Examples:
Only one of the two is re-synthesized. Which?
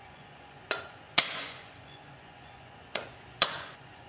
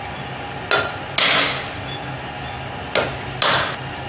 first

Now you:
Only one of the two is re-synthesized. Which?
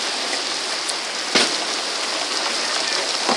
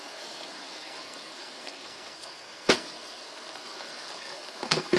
second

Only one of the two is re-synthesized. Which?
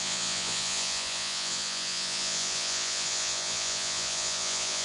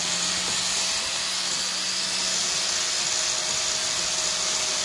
first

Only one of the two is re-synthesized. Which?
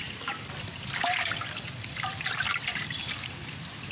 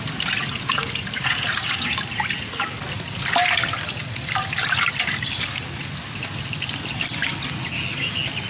first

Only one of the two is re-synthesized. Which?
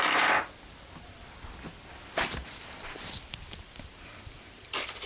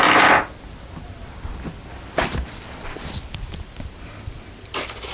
first